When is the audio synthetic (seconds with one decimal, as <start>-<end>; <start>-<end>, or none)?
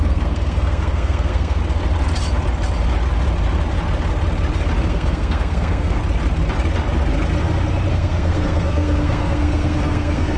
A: 0.0-1.6; 4.8-6.0; 7.9-10.4